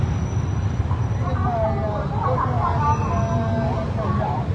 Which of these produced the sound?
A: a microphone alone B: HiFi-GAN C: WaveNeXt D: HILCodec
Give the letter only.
A